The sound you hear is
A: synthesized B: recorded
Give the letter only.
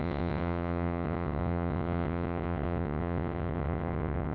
A